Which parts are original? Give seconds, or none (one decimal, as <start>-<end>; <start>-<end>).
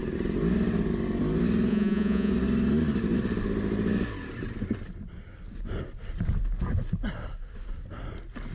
0.0-1.7; 2.3-8.5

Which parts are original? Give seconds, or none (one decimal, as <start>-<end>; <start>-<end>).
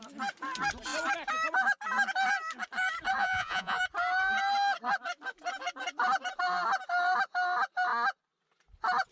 0.0-3.2; 3.8-9.1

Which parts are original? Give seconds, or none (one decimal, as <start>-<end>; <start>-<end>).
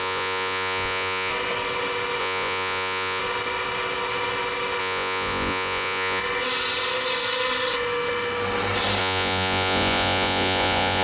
1.3-2.2; 3.2-4.8; 6.2-9.0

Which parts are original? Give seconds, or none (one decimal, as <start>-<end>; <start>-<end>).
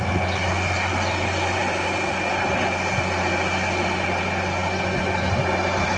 0.0-6.0